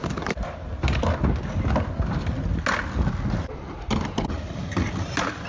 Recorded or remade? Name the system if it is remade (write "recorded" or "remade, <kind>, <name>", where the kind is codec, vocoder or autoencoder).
recorded